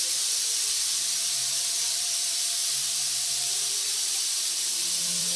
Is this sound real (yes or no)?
no